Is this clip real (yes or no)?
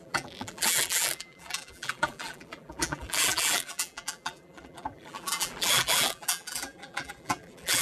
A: no